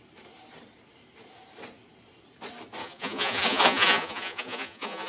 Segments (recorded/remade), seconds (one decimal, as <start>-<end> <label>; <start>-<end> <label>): 0.0-2.8 recorded; 2.8-5.1 remade

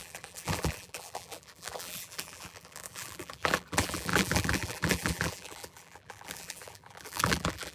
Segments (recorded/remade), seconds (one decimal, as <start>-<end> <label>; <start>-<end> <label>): 0.0-7.7 remade

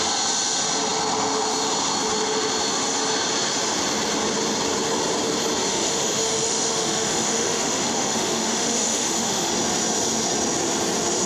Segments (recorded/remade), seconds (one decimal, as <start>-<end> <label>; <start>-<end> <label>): 0.0-5.7 recorded; 5.7-9.5 remade; 9.5-11.3 recorded

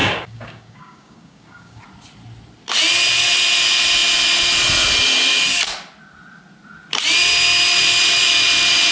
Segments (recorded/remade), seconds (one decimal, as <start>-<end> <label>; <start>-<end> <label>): 0.0-1.8 remade; 1.8-8.9 recorded

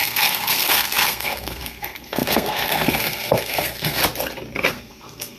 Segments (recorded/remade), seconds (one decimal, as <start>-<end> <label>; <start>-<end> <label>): 0.0-4.0 remade; 4.0-4.7 recorded; 4.7-5.4 remade

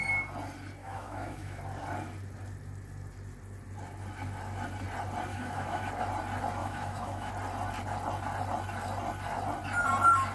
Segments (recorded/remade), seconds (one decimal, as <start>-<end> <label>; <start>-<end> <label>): 0.0-0.8 recorded; 0.8-1.6 remade; 1.6-5.3 recorded; 5.3-5.9 remade; 5.9-6.6 recorded; 6.6-7.3 remade; 7.3-10.3 recorded